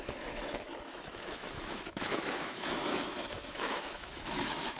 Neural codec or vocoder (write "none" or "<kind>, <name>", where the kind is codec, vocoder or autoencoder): autoencoder, DAC-VAE